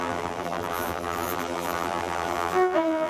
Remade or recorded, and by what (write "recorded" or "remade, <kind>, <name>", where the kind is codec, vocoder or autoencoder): remade, vocoder, BigVGAN v2